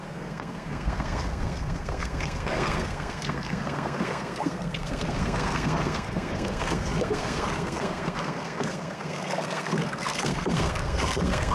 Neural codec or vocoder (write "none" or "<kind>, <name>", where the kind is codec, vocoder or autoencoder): codec, SNAC